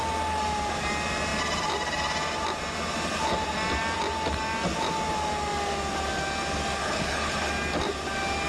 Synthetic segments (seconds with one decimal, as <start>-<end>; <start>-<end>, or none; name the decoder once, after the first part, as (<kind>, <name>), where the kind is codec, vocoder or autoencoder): 6.8-7.5 (codec, HILCodec)